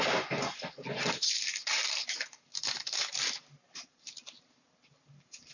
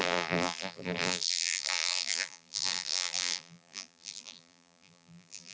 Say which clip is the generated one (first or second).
second